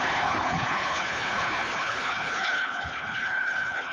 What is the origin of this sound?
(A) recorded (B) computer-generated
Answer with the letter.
B